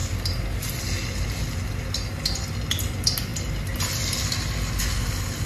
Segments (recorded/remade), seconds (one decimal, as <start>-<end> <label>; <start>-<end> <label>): 0.0-5.5 recorded